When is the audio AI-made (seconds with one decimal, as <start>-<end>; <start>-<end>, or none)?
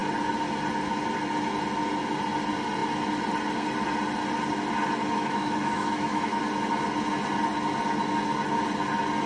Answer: 5.0-6.4